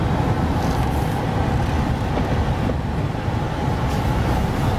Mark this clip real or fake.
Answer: real